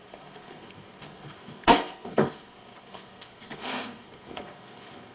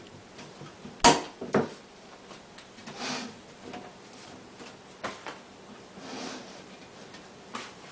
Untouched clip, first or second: second